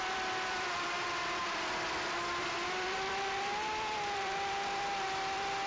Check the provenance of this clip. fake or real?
fake